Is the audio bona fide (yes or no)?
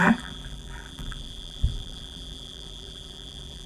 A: no